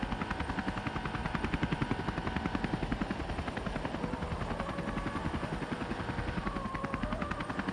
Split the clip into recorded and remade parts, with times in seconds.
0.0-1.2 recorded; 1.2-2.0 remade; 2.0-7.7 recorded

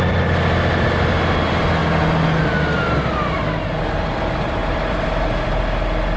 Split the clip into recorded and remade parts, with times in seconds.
0.0-4.6 recorded; 4.6-5.6 remade; 5.6-6.2 recorded

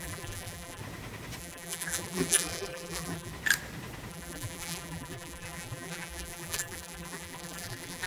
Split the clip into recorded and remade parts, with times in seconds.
0.0-0.8 remade; 0.8-1.4 recorded; 1.4-3.3 remade; 3.3-4.1 recorded; 4.1-8.1 remade

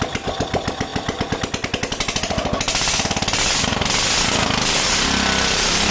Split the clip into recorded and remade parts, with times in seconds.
0.0-5.9 recorded

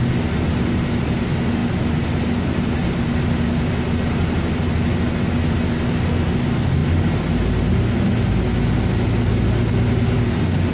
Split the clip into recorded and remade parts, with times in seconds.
0.0-10.7 recorded

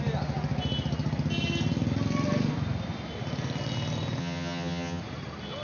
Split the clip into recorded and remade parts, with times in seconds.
0.0-4.2 recorded; 4.2-5.0 remade; 5.0-5.6 recorded